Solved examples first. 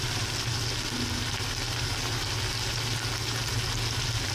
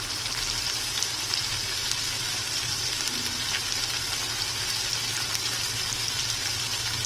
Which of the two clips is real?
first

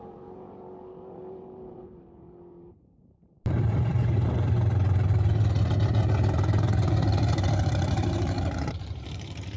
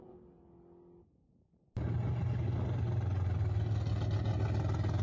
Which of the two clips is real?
second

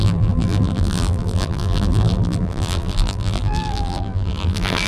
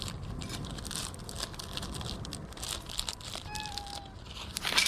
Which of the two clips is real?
second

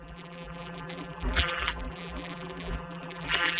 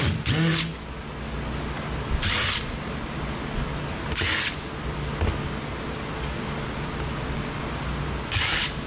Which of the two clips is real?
second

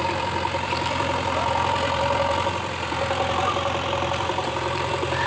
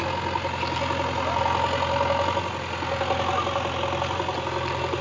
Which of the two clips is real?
second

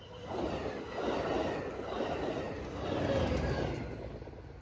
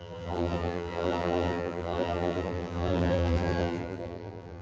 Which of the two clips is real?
first